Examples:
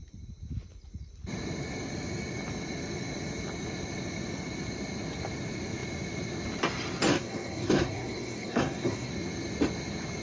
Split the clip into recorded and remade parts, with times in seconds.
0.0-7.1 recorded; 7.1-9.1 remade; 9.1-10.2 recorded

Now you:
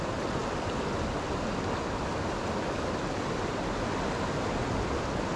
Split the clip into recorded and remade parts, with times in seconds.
0.0-5.4 recorded

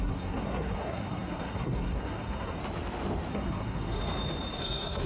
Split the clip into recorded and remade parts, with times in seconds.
0.0-2.6 remade; 2.6-3.3 recorded; 3.3-4.0 remade; 4.0-4.6 recorded; 4.6-5.1 remade

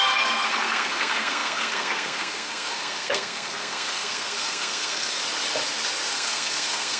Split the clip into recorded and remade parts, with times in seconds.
0.0-5.2 remade; 5.2-6.1 recorded; 6.1-7.0 remade

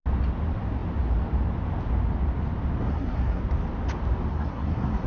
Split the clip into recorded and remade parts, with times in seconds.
0.0-2.8 recorded; 2.8-3.4 remade; 3.4-4.3 recorded; 4.3-5.1 remade

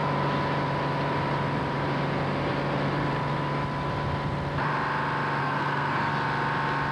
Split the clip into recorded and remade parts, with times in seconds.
0.0-5.4 recorded; 5.4-6.1 remade; 6.1-6.9 recorded

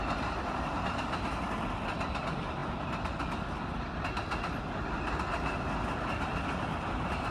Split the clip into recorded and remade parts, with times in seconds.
0.0-7.3 recorded